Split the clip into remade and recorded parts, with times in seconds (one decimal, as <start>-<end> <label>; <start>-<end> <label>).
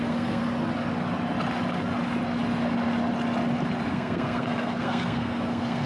0.0-0.4 remade; 0.4-3.9 recorded; 3.9-5.9 remade